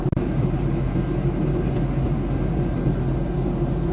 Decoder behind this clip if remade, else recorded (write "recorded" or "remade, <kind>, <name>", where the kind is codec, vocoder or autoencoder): recorded